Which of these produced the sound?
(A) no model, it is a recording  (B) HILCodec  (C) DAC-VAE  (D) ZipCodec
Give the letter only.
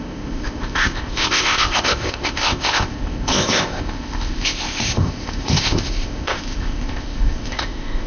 D